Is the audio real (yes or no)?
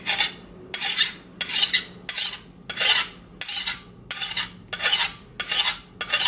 yes